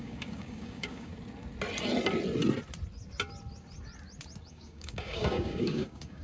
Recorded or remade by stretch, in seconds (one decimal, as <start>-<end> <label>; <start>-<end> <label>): 0.0-1.1 remade; 1.1-4.5 recorded; 4.5-6.2 remade